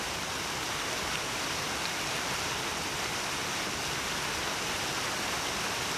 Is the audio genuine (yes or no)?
yes